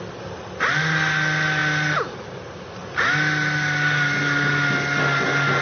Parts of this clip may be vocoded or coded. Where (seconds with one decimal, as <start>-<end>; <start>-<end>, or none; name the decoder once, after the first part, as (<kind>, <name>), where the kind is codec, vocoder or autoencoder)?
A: none